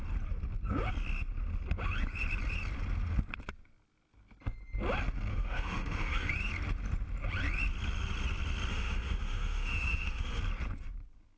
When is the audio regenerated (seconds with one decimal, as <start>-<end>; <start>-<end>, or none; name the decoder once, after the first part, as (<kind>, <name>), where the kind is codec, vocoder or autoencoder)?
5.3-6.3 (autoencoder, DAC-VAE); 8.7-10.4